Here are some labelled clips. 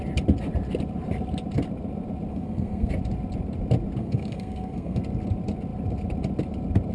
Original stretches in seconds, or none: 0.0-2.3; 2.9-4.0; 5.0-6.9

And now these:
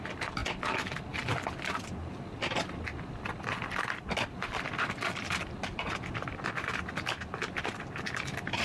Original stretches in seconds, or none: 0.0-8.6

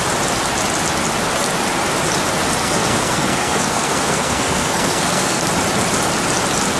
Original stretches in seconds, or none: 0.0-2.6; 5.4-6.8

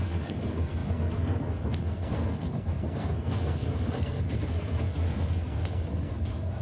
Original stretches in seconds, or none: none

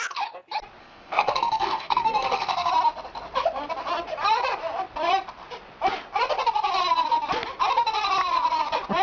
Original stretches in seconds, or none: 0.0-0.8; 2.7-9.0

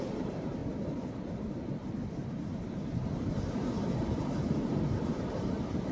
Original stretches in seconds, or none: 0.0-5.9

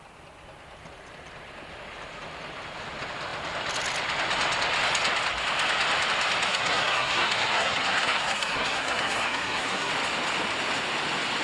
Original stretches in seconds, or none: 0.0-6.5; 9.9-11.4